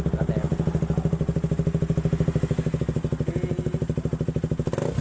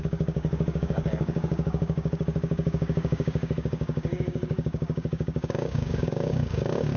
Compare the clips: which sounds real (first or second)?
first